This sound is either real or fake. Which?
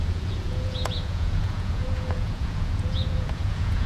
fake